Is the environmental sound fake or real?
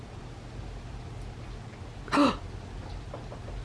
real